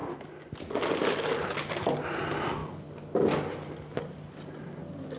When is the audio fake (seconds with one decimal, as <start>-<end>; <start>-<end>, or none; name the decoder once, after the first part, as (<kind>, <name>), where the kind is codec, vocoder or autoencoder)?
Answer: none